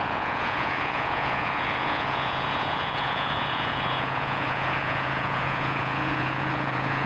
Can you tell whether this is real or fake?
fake